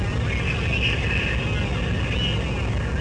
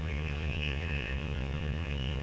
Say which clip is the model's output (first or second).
second